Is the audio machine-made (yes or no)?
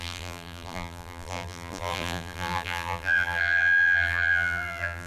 yes